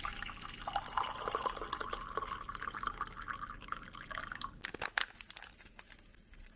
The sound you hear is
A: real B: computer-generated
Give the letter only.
A